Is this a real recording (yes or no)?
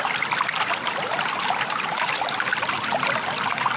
yes